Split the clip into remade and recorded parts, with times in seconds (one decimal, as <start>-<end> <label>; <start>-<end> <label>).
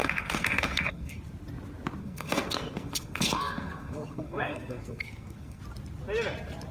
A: 0.0-1.2 remade; 1.2-2.0 recorded; 2.0-5.6 remade; 5.6-6.7 recorded